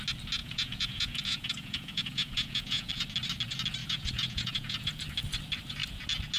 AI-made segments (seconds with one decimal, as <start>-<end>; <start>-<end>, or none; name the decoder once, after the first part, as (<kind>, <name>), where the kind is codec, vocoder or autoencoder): 0.4-2.9 (vocoder, Vocos); 3.8-5.0